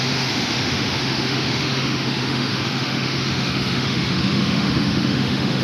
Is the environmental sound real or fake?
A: fake